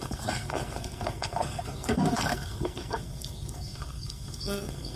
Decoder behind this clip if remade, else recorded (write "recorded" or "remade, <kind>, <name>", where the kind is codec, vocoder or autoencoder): remade, codec, SNAC